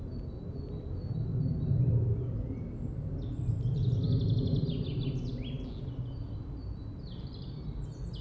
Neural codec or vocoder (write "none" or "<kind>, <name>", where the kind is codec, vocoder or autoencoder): none